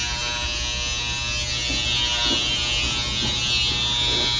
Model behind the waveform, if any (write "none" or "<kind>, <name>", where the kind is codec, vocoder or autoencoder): none